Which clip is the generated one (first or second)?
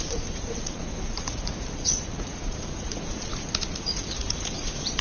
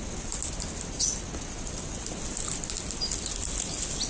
first